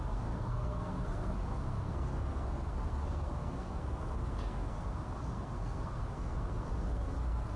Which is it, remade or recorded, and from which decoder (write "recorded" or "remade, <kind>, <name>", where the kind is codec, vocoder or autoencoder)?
remade, codec, SNAC